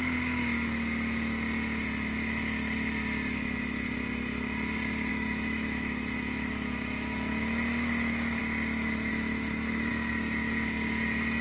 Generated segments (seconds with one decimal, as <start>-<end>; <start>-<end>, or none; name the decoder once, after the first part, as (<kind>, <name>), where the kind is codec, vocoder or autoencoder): 5.1-8.4 (autoencoder, DAC-VAE); 9.1-9.9